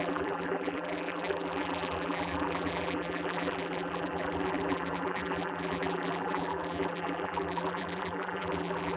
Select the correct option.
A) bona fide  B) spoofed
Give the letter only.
B